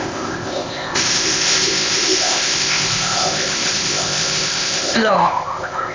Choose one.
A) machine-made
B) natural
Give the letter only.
A